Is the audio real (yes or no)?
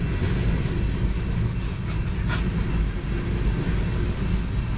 yes